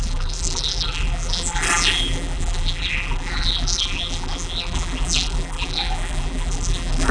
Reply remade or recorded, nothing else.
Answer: remade